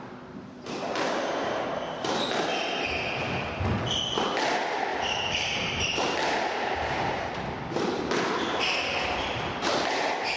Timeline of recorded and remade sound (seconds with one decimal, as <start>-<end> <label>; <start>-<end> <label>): 0.0-4.9 recorded; 4.9-7.3 remade; 7.3-10.4 recorded